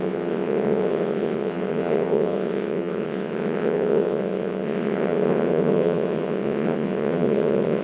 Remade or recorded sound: remade